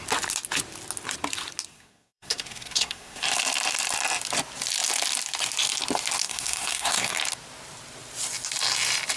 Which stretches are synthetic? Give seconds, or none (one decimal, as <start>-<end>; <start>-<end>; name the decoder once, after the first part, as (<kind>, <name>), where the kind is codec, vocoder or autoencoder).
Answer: 1.7-3.2 (codec, SNAC); 6.2-7.2